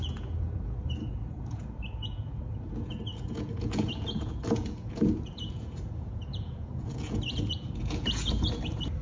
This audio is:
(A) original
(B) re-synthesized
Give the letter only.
B